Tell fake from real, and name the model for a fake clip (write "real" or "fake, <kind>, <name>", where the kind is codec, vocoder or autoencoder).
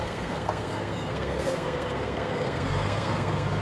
fake, codec, SNAC